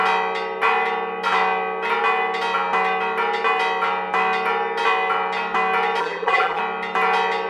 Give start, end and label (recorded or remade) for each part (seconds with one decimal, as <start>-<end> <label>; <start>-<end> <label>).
0.0-6.0 recorded; 6.0-6.6 remade; 6.6-7.5 recorded